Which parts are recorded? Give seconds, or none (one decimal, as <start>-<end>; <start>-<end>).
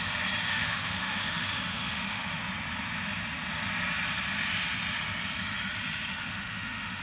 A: 0.0-0.5; 2.4-6.1